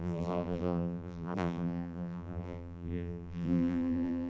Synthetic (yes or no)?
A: yes